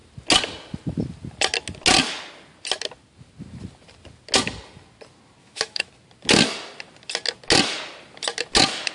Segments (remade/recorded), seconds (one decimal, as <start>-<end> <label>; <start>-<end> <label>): 0.0-5.4 recorded; 5.4-5.9 remade; 5.9-8.9 recorded